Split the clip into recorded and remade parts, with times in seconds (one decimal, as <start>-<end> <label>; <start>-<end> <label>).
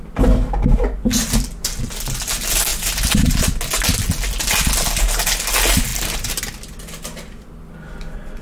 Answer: 0.0-2.7 recorded; 2.7-3.4 remade; 3.4-5.9 recorded; 5.9-6.4 remade; 6.4-8.4 recorded